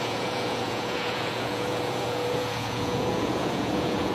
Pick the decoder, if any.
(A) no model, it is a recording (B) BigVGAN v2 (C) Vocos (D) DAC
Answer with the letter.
C